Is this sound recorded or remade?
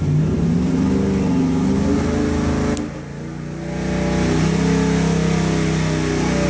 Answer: recorded